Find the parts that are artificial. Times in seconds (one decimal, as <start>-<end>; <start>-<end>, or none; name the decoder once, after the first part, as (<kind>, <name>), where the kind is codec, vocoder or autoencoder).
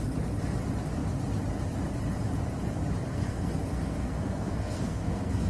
3.1-5.5 (codec, SNAC)